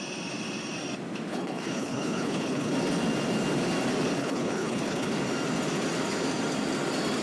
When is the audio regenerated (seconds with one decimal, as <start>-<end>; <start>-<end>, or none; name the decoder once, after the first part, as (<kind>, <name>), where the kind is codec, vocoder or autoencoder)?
1.3-2.7 (codec, HILCodec); 4.2-5.1